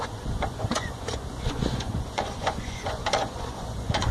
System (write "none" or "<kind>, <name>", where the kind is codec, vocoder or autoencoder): vocoder, Vocos